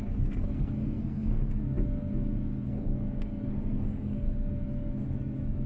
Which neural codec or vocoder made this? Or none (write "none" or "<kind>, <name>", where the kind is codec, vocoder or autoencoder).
codec, SNAC